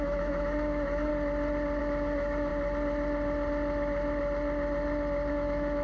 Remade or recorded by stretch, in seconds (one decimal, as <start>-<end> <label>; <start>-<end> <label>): 0.0-1.1 remade; 1.1-1.8 recorded; 1.8-2.5 remade; 2.5-5.3 recorded; 5.3-5.8 remade